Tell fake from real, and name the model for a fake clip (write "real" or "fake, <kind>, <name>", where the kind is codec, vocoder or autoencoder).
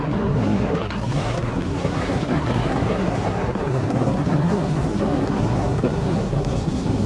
fake, codec, SNAC